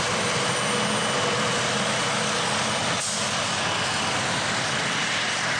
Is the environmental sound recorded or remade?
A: recorded